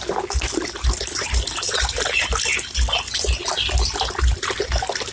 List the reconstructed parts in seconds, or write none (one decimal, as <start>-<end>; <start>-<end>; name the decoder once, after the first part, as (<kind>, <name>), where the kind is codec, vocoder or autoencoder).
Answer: none